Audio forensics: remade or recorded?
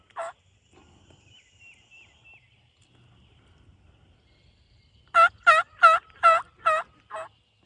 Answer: recorded